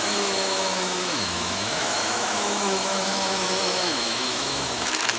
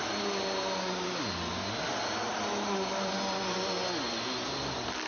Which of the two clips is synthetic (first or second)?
first